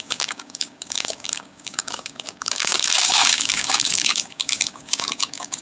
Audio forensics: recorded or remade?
remade